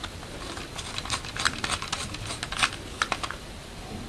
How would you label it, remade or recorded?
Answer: recorded